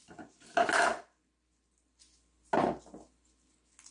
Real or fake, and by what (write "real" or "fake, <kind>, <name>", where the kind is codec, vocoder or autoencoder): real